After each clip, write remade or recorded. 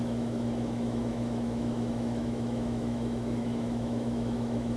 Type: remade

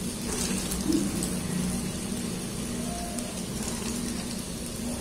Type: recorded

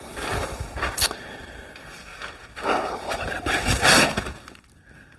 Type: recorded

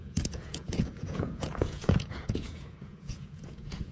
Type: remade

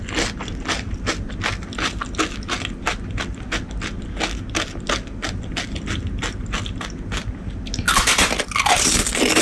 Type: recorded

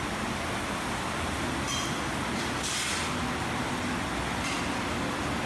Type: recorded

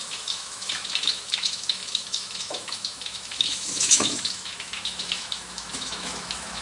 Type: remade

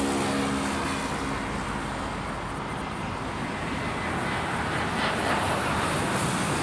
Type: recorded